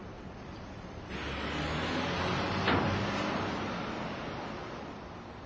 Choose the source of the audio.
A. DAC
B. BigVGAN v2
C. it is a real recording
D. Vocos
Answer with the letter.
C